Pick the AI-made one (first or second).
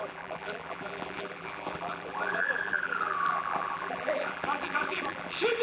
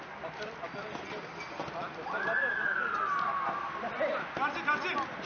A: first